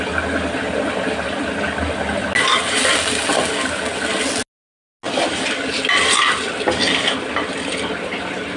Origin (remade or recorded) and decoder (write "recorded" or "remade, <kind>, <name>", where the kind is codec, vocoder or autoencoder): recorded